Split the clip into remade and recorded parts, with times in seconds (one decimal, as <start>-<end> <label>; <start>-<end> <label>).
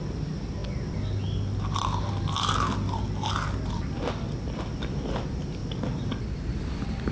0.0-7.1 recorded